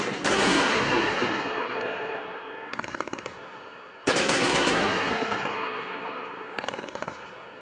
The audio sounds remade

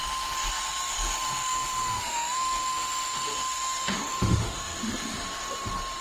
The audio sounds remade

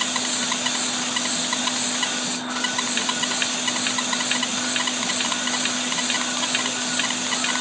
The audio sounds recorded